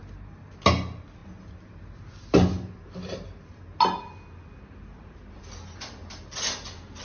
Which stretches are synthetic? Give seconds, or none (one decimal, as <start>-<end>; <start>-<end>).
none